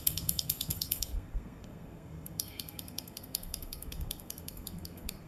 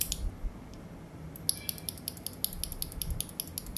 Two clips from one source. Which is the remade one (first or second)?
first